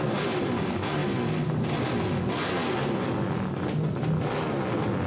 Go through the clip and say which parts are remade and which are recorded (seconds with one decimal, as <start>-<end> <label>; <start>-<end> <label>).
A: 0.0-5.1 recorded